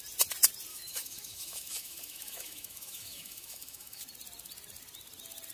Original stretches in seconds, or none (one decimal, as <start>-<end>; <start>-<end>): 0.0-0.7; 4.0-5.5